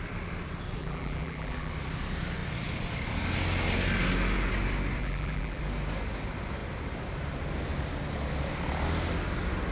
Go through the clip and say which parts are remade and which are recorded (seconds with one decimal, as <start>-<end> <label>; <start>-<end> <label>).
0.0-0.8 recorded; 0.8-1.7 remade; 1.7-5.0 recorded; 5.0-5.6 remade; 5.6-9.7 recorded